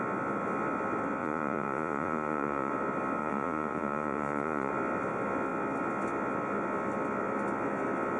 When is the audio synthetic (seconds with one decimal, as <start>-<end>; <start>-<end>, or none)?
1.2-2.7; 3.2-4.7